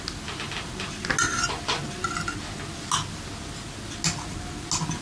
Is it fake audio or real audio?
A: real